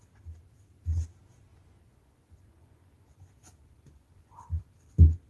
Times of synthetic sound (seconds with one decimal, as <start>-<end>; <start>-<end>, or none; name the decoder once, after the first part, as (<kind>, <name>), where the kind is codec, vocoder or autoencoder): 1.5-4.7 (vocoder, Vocos)